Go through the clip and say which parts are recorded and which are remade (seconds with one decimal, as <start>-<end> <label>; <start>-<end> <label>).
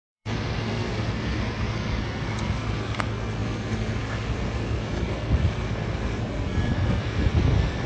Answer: 0.0-7.9 remade